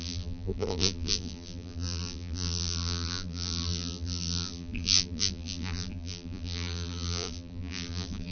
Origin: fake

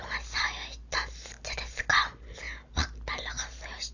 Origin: real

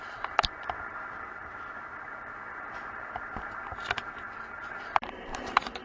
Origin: fake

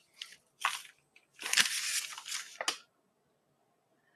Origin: real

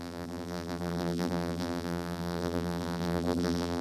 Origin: fake